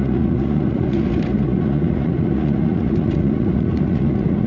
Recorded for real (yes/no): no